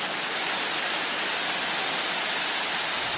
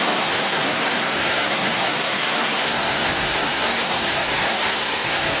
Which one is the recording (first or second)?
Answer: first